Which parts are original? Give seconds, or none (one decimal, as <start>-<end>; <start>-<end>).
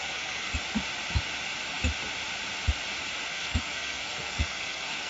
0.5-3.3